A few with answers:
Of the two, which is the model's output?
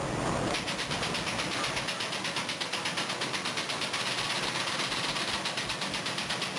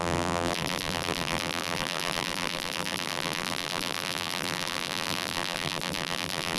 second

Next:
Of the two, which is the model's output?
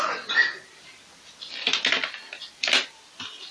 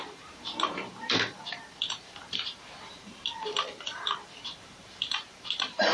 second